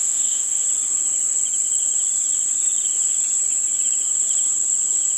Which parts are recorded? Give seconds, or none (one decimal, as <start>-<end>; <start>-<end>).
0.6-5.2